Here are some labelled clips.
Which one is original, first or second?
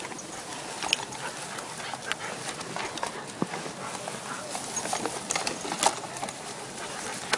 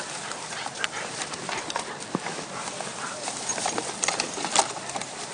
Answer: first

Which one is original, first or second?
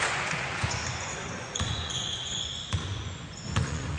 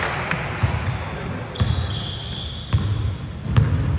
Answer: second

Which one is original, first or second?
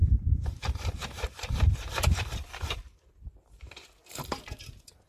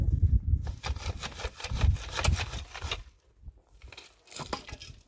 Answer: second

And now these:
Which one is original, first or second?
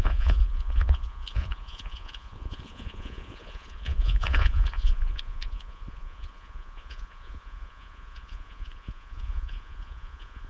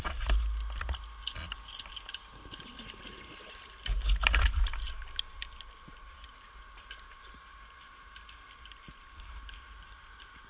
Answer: second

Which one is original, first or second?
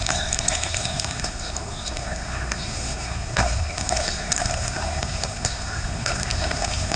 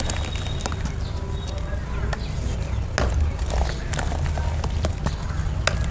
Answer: second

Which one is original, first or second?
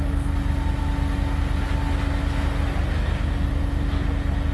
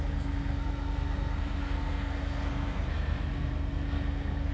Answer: first